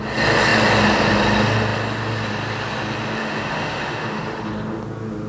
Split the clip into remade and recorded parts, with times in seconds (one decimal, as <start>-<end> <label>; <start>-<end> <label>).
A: 0.0-3.2 recorded; 3.2-4.2 remade; 4.2-5.3 recorded

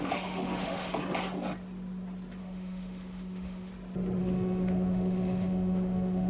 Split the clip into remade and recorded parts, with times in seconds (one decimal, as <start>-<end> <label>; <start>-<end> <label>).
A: 0.0-0.9 remade; 0.9-2.4 recorded; 2.4-3.7 remade; 3.7-4.2 recorded; 4.2-6.3 remade

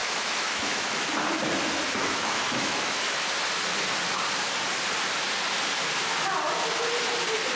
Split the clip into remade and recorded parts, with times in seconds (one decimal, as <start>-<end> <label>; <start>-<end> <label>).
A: 0.0-1.1 remade; 1.1-2.0 recorded; 2.0-3.3 remade; 3.3-7.6 recorded

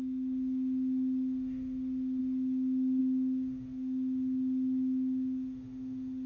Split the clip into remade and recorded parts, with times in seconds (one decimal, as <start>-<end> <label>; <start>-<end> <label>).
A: 0.0-6.3 remade

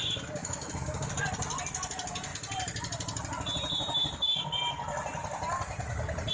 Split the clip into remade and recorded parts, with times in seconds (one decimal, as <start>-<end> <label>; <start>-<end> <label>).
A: 0.0-0.4 recorded; 0.4-1.1 remade; 1.1-6.3 recorded

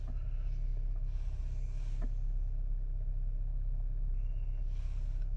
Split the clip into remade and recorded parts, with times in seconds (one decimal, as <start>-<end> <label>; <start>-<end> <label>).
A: 0.0-3.5 recorded; 3.5-4.1 remade; 4.1-5.4 recorded

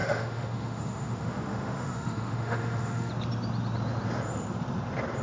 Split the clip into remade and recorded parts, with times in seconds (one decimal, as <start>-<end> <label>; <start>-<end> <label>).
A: 0.0-3.1 remade; 3.1-5.2 recorded